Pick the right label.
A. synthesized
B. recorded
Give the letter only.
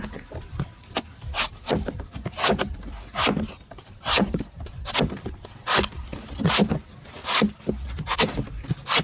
B